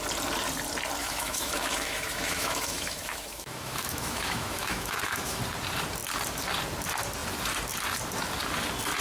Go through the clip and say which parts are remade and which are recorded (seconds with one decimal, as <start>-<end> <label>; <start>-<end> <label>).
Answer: 0.0-1.0 recorded; 1.0-5.4 remade; 5.4-9.0 recorded